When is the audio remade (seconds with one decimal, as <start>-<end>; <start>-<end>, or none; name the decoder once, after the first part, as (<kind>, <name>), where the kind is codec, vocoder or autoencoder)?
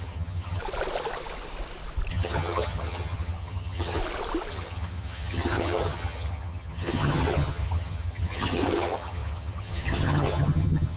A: 0.0-0.6 (vocoder, HiFi-GAN); 2.1-4.0; 4.5-11.0